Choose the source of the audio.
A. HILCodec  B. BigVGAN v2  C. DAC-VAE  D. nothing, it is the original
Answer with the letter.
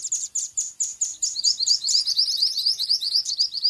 D